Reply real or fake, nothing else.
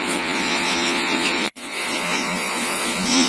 fake